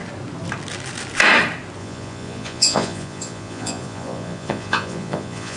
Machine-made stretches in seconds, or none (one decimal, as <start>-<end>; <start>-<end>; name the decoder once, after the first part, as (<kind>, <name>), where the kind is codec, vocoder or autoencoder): 1.8-5.6 (vocoder, Vocos)